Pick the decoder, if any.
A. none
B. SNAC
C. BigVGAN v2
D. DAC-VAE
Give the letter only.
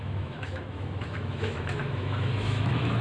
D